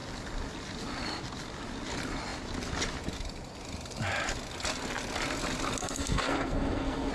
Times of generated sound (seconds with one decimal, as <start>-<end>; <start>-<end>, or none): 5.8-7.1